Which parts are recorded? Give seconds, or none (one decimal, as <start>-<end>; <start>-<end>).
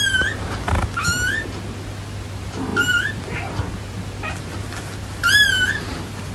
0.0-5.2